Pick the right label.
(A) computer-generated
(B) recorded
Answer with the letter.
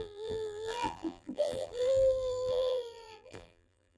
A